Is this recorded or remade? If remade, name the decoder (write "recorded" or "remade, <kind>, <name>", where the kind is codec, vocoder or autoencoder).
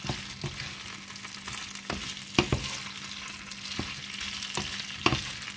recorded